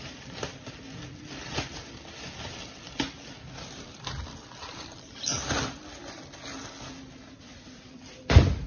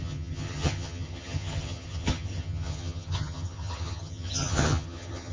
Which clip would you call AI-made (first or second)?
second